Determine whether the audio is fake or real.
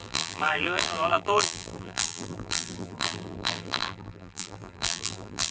fake